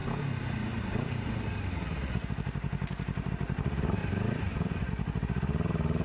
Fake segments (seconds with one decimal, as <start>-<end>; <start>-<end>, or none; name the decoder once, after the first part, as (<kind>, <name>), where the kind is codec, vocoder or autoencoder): 4.0-4.9 (vocoder, BigVGAN v2)